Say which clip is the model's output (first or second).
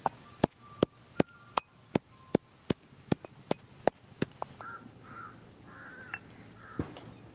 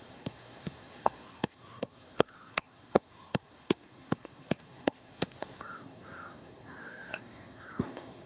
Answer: second